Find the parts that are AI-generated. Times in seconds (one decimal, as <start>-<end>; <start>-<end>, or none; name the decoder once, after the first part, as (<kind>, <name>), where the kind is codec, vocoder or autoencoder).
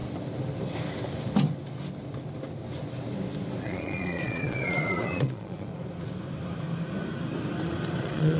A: 3.6-5.7 (vocoder, Vocos); 8.0-8.4